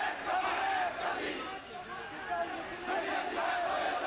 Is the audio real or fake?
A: real